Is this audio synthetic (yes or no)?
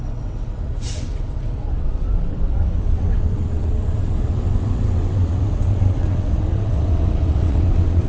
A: yes